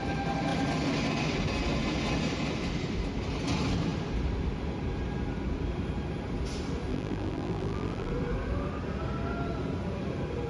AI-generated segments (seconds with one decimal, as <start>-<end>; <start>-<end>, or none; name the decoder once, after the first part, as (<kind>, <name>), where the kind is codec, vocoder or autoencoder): 6.9-8.1 (vocoder, BigVGAN v2)